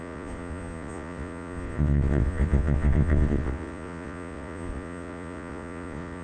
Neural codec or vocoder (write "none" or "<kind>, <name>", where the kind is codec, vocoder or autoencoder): vocoder, Vocos